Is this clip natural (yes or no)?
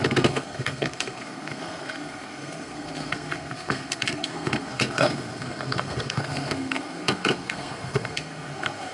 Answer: no